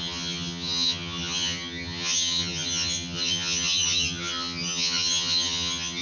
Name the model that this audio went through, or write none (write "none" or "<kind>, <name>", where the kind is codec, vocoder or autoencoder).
vocoder, HiFi-GAN